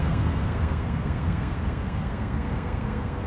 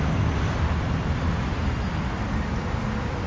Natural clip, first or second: second